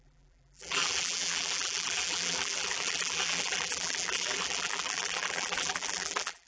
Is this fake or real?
fake